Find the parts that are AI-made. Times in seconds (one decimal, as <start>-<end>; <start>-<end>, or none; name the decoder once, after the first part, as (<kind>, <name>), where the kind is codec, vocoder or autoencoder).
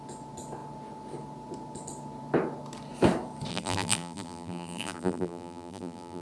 3.5-6.2 (vocoder, BigVGAN v2)